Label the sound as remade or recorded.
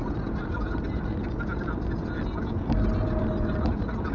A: recorded